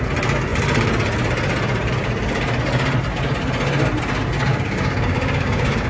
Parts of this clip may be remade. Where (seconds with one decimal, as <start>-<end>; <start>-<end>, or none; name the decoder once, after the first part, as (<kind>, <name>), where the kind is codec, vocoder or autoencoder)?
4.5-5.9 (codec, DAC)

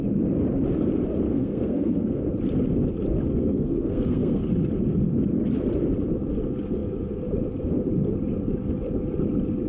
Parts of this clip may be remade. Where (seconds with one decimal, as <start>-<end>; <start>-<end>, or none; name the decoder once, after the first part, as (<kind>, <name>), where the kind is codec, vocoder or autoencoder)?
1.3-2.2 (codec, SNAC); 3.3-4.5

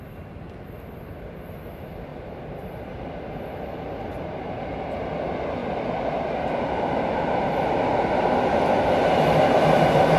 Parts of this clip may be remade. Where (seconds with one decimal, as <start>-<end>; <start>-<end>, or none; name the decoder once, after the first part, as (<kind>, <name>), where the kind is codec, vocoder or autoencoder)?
2.1-4.6 (vocoder, BigVGAN v2)

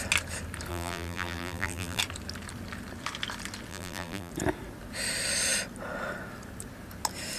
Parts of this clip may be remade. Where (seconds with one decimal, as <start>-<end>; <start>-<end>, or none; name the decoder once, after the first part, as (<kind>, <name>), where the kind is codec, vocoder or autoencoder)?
0.7-2.0 (vocoder, BigVGAN v2); 3.7-4.3